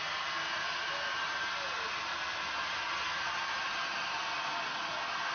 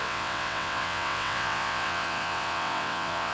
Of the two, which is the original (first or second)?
first